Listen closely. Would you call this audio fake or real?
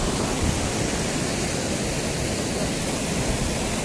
real